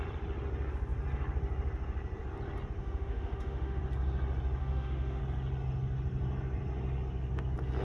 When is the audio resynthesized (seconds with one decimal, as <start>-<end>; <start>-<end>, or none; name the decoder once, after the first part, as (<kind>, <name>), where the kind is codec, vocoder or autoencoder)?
2.8-3.8 (autoencoder, DAC-VAE); 4.6-5.2